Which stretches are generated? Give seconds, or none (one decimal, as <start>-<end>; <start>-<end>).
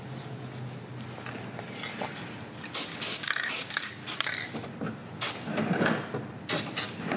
2.9-3.8